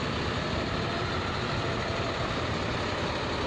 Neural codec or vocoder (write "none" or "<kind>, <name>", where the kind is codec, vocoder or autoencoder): none